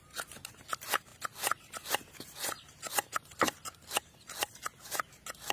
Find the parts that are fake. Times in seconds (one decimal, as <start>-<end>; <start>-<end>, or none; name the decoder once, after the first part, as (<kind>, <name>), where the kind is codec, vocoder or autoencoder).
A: none

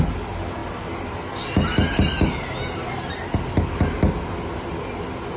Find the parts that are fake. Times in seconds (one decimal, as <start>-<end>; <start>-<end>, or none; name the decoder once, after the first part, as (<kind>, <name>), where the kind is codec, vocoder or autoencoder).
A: none

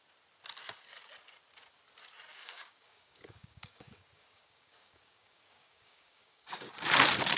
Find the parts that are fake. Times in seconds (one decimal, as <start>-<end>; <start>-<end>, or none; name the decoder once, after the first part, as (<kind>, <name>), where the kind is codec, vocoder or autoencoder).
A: 2.3-6.7 (codec, DAC)

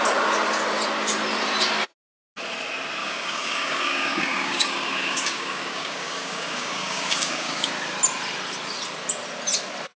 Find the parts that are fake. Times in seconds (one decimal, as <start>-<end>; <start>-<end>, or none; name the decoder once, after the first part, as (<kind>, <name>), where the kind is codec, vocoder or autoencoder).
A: 3.0-7.7 (codec, DAC)